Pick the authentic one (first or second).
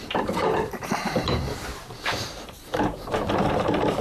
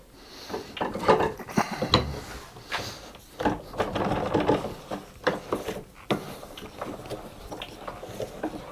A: second